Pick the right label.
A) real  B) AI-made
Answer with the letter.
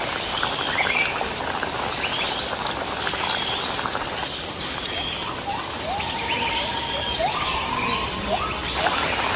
B